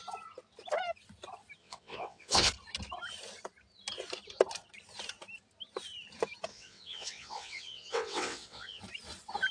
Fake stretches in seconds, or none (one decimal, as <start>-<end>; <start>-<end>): 1.6-2.5; 6.5-8.8